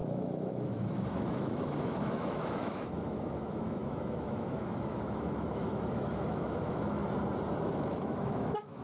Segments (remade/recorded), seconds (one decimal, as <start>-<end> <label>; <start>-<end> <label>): 0.0-7.0 remade; 7.0-7.6 recorded; 7.6-8.8 remade